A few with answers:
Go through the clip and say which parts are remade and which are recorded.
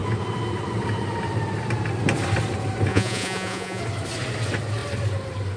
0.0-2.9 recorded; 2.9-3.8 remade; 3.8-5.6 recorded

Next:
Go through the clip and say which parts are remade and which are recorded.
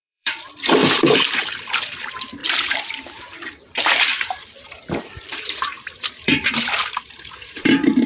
0.0-8.1 remade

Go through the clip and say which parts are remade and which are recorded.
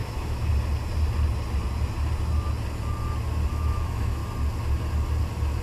0.0-0.5 remade; 0.5-3.5 recorded; 3.5-4.2 remade; 4.2-5.6 recorded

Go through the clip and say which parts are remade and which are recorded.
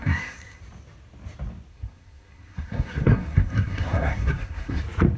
0.0-0.6 remade; 0.6-1.7 recorded; 1.7-4.8 remade; 4.8-5.2 recorded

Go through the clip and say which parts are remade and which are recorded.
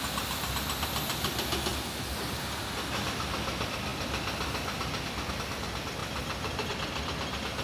0.0-7.6 recorded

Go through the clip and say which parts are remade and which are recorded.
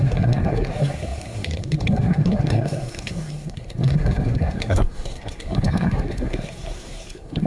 0.0-7.5 remade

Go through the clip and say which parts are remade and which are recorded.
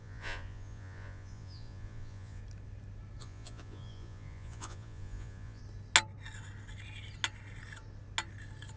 0.0-2.4 remade; 2.4-3.2 recorded; 3.2-5.6 remade; 5.6-8.8 recorded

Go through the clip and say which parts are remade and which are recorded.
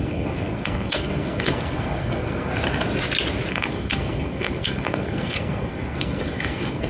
0.0-2.5 remade; 2.5-3.5 recorded; 3.5-6.9 remade